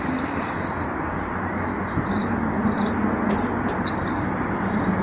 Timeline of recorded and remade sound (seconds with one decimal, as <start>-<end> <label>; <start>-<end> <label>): 0.0-5.0 recorded